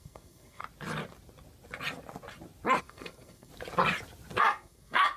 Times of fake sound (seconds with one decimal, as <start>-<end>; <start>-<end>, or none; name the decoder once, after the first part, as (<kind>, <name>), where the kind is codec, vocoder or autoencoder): 0.0-0.6 (codec, SNAC); 2.8-3.5; 4.4-5.2